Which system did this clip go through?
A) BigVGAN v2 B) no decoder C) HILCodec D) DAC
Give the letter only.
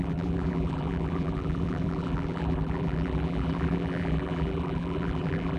A